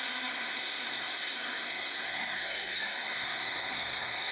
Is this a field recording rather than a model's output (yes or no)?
no